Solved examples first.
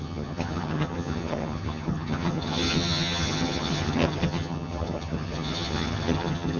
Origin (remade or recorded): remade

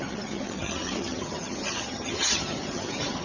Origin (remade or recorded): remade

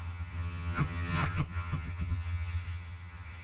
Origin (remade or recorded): remade